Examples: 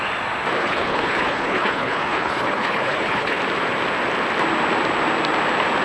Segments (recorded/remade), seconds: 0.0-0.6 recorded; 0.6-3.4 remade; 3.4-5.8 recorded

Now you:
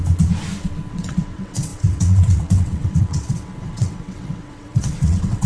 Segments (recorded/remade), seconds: 0.0-0.9 recorded; 0.9-5.5 remade

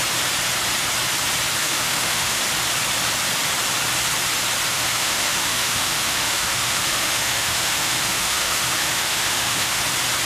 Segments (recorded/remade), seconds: 0.0-1.6 recorded; 1.6-2.4 remade; 2.4-4.7 recorded; 4.7-9.8 remade; 9.8-10.3 recorded

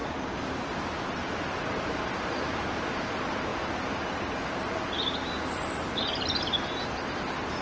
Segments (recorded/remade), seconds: 0.0-3.1 remade; 3.1-7.6 recorded

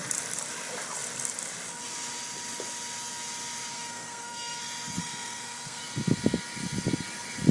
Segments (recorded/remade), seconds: 0.0-3.7 recorded; 3.7-4.6 remade; 4.6-5.0 recorded; 5.0-5.8 remade; 5.8-7.5 recorded

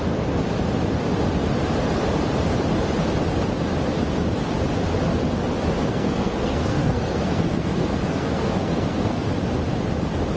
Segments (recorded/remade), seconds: 0.0-5.9 recorded; 5.9-9.3 remade; 9.3-10.4 recorded